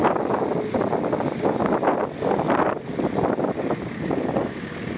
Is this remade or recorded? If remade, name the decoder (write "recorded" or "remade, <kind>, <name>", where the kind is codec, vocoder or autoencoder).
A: recorded